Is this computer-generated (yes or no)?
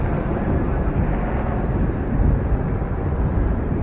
no